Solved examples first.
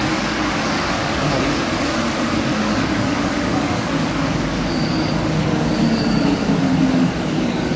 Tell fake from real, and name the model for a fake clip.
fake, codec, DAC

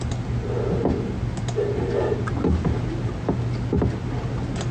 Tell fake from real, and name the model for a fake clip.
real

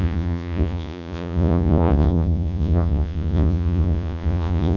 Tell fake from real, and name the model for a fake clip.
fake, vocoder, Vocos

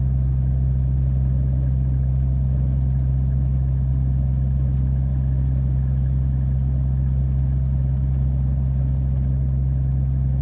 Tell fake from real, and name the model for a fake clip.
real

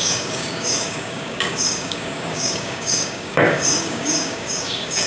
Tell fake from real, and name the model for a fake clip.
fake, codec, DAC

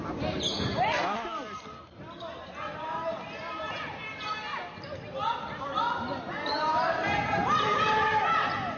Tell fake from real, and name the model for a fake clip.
real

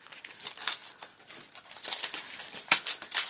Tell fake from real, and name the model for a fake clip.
real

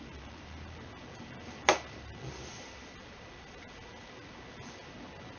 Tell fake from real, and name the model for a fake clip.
real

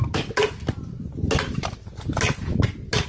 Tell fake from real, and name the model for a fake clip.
real